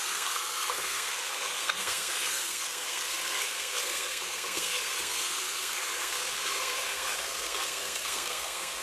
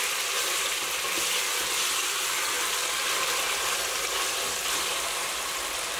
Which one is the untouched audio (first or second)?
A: second